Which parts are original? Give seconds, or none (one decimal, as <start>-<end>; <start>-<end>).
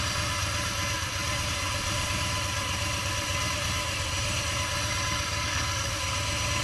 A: 0.0-5.3; 6.0-6.6